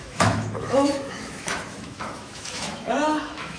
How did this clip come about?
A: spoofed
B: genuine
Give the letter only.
A